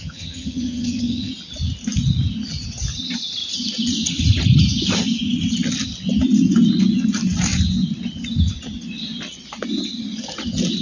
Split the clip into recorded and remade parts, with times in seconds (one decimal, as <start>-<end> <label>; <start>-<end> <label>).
0.0-1.3 remade; 1.3-10.8 recorded